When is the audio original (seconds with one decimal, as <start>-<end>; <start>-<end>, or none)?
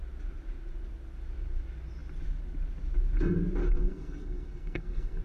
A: 0.0-3.6